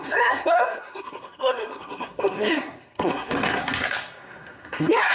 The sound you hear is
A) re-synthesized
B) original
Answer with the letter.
A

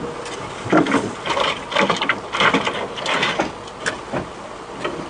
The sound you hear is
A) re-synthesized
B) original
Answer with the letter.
B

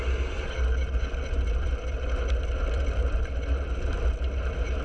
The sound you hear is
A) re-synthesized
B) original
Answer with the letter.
B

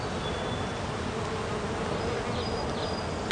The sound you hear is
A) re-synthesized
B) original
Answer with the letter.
B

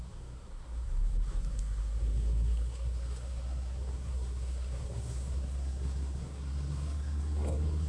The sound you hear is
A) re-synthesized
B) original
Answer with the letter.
A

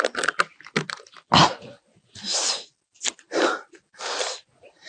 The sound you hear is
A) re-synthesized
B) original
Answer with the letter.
B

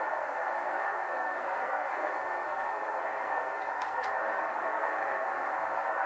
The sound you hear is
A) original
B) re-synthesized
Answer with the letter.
B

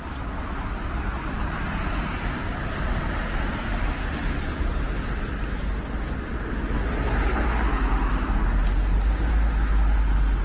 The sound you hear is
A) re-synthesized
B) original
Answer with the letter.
B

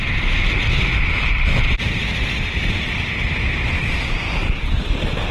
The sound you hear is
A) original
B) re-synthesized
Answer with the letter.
A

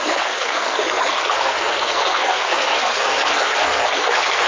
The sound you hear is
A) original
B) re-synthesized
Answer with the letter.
B